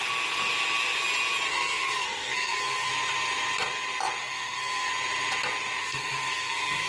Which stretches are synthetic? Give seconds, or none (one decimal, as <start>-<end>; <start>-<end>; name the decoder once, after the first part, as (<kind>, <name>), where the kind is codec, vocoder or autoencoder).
1.5-2.9 (codec, SNAC); 4.2-4.9; 5.8-6.9